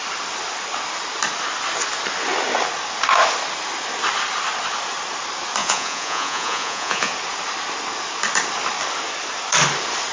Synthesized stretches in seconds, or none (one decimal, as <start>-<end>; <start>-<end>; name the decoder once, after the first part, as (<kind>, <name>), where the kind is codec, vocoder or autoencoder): 5.6-7.1 (vocoder, Vocos)